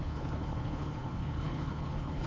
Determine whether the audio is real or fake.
fake